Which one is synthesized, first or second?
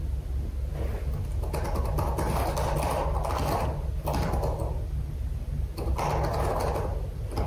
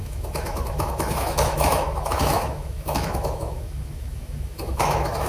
second